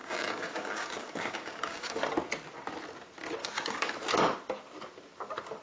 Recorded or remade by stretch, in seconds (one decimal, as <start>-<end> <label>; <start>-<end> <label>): 0.0-2.0 remade; 2.0-3.4 recorded; 3.4-3.9 remade; 3.9-5.6 recorded